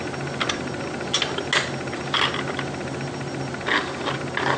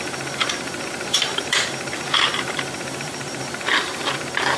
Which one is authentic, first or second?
first